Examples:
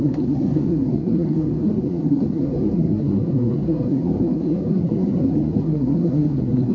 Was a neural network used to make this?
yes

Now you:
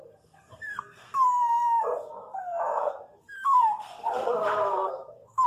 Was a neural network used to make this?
yes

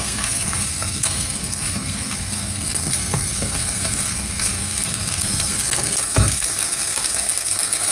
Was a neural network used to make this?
yes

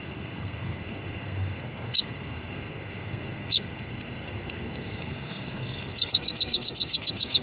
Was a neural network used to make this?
yes